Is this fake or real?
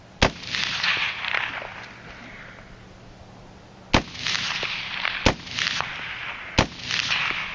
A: real